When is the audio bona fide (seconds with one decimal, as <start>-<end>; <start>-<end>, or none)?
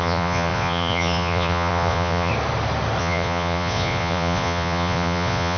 2.3-3.0